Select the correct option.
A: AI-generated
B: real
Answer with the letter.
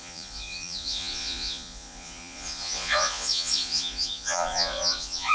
A